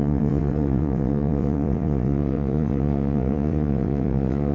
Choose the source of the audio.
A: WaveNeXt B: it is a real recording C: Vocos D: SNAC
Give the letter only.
A